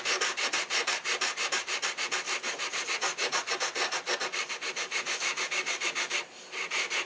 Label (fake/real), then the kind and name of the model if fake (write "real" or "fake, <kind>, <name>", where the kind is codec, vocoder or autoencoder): fake, vocoder, BigVGAN v2